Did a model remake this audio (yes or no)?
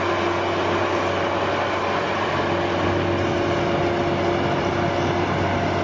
no